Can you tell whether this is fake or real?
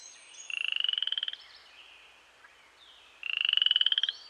fake